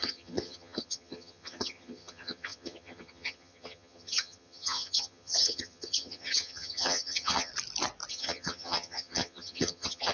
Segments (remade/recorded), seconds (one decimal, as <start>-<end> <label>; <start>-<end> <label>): 0.0-7.5 remade; 7.5-8.1 recorded; 8.1-10.1 remade